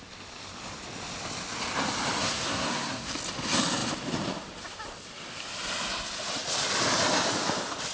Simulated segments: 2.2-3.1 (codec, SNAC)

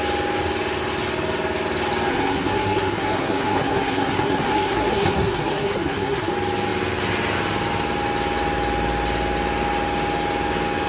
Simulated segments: 2.1-6.3 (codec, SNAC)

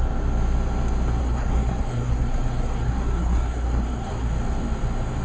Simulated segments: 1.2-4.3 (codec, SNAC)

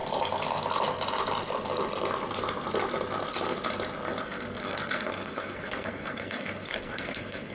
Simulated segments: 4.2-7.5 (codec, SNAC)

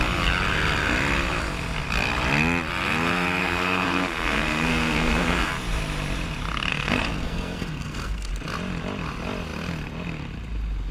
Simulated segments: 3.4-5.5 (codec, SNAC); 6.7-8.3

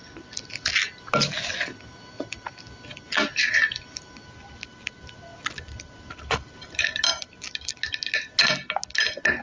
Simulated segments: none

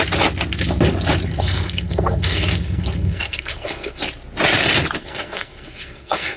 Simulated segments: 1.3-4.0 (codec, SNAC); 5.0-6.4